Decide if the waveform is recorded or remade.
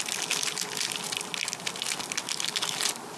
recorded